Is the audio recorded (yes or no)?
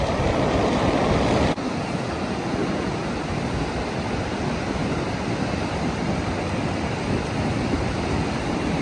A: yes